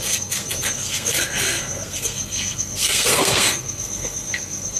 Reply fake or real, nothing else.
fake